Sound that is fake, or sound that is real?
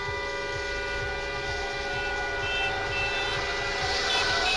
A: real